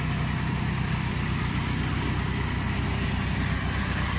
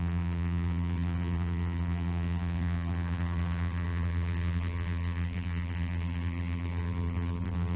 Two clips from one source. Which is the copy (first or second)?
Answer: second